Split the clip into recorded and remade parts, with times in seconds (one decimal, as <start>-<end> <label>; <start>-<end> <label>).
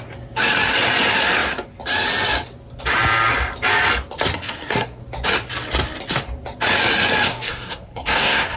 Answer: 0.0-4.3 recorded; 4.3-5.0 remade; 5.0-7.3 recorded; 7.3-8.6 remade